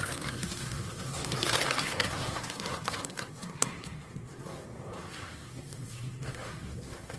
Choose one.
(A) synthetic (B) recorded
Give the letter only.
A